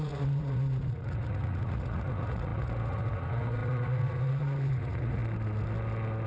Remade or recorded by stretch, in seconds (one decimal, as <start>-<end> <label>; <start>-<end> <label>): 0.0-5.2 remade; 5.2-6.3 recorded